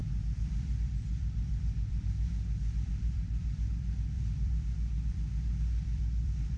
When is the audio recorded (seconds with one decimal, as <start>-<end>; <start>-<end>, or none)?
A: none